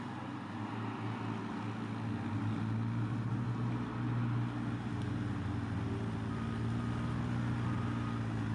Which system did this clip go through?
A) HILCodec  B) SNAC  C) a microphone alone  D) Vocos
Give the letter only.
C